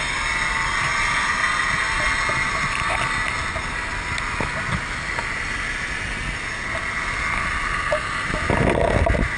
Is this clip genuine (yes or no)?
yes